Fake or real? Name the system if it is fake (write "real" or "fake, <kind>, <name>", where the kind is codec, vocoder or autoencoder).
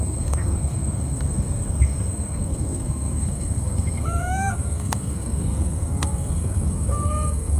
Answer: fake, codec, SNAC